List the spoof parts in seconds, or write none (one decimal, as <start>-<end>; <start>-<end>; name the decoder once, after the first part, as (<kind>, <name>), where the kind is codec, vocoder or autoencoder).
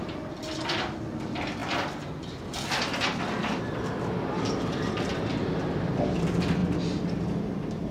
none